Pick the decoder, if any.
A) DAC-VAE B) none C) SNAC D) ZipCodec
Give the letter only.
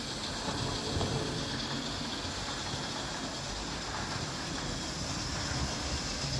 B